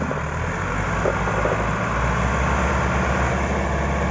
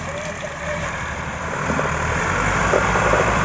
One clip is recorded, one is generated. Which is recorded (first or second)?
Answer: first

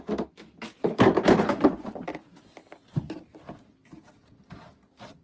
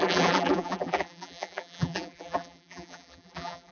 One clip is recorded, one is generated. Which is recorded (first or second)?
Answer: first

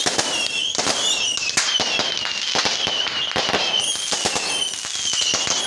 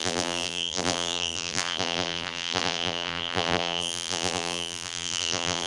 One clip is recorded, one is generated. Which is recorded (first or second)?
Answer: first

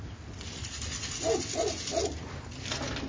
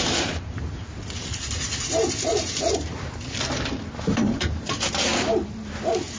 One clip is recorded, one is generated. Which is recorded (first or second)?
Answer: first